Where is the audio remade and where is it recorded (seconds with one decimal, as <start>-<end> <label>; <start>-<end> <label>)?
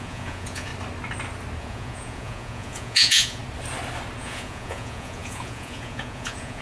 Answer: 0.0-0.7 remade; 0.7-1.6 recorded; 1.6-3.4 remade; 3.4-4.2 recorded; 4.2-6.6 remade